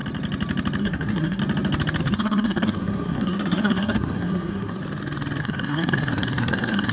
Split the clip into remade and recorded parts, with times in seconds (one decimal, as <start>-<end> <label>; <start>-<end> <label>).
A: 0.0-0.8 recorded; 0.8-1.4 remade; 1.4-2.0 recorded; 2.0-4.8 remade; 4.8-5.4 recorded; 5.4-6.9 remade